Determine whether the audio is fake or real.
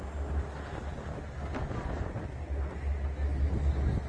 real